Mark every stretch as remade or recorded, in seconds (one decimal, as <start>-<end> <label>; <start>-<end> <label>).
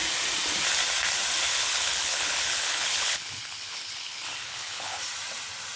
0.0-1.5 recorded; 1.5-5.0 remade; 5.0-5.8 recorded